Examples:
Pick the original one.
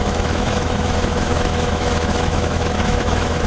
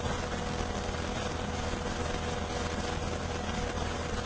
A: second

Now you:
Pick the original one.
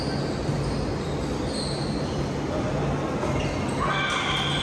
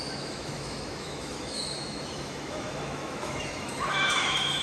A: first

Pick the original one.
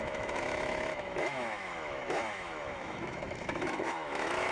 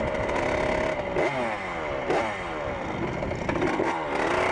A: second